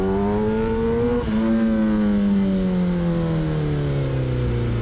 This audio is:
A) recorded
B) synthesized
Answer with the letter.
A